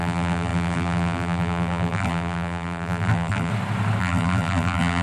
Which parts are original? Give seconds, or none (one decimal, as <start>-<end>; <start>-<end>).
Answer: 3.5-4.0